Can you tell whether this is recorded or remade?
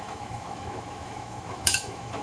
remade